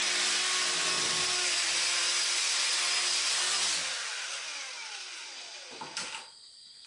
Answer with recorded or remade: recorded